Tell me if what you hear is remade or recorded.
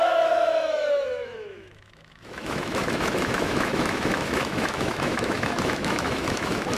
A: remade